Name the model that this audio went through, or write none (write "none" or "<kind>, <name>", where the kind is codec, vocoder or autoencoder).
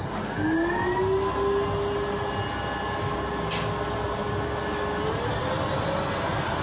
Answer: none